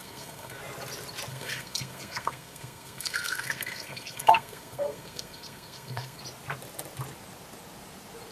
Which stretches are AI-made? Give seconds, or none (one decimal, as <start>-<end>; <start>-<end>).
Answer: 0.0-0.6; 1.3-6.2

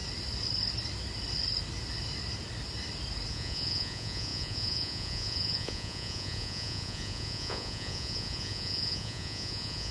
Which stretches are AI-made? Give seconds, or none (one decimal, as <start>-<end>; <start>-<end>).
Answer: 3.3-9.9

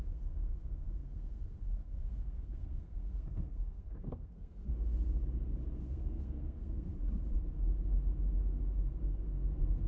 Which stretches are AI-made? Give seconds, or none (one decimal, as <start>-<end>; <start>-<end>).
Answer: 0.0-4.7; 5.8-6.9; 9.0-9.9

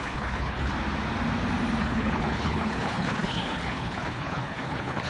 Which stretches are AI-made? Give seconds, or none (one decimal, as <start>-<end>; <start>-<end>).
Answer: 0.0-0.7; 1.8-5.1

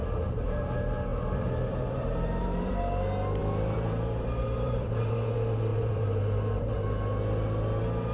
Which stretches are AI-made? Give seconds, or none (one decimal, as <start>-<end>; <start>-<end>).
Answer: 0.0-0.6; 1.1-2.8; 3.4-5.1; 5.7-6.7